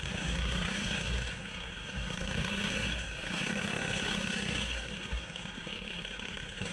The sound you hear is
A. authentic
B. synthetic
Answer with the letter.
B